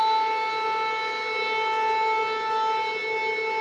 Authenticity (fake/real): real